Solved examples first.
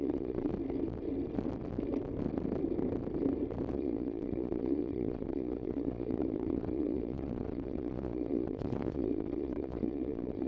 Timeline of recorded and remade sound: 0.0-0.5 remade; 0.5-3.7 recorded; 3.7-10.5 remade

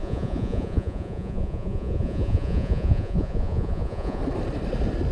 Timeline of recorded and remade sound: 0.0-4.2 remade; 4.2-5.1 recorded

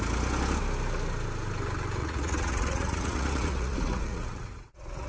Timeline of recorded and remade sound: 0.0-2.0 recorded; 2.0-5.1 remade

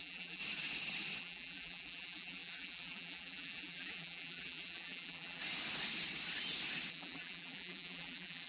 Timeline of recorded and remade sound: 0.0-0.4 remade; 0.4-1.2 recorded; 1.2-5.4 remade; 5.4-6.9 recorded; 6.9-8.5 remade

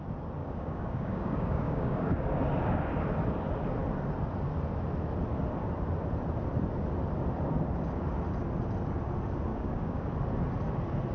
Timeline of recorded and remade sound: 0.0-0.4 recorded; 0.4-2.4 remade; 2.4-9.5 recorded; 9.5-10.1 remade; 10.1-11.1 recorded

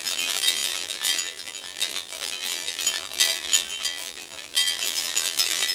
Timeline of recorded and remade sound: 0.0-5.7 remade

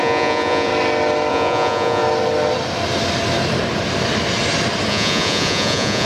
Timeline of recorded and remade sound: 0.0-0.7 remade; 0.7-1.3 recorded; 1.3-2.0 remade; 2.0-4.9 recorded; 4.9-6.1 remade